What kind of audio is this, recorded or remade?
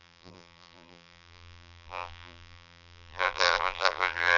remade